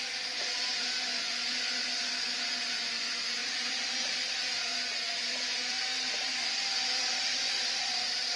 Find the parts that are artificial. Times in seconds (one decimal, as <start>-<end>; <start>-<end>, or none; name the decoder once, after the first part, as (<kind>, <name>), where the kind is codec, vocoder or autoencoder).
3.4-8.4 (vocoder, BigVGAN v2)